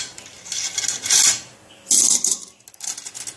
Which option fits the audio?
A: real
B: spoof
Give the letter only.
A